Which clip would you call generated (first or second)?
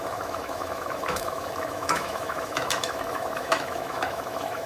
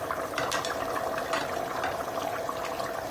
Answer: first